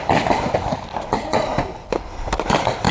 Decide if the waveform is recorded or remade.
remade